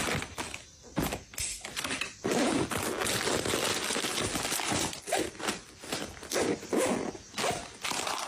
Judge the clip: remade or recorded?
recorded